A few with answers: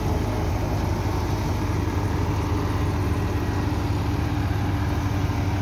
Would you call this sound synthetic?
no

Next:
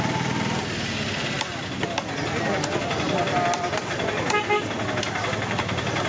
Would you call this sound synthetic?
no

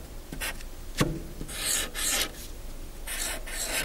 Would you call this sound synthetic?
no